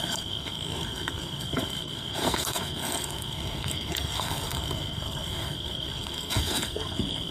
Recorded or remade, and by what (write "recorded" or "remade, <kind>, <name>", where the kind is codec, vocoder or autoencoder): remade, codec, SNAC